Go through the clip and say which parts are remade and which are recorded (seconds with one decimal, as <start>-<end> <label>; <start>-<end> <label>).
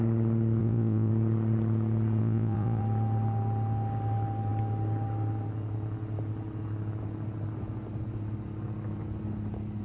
0.0-0.6 recorded; 0.6-1.1 remade; 1.1-2.2 recorded; 2.2-2.8 remade; 2.8-9.8 recorded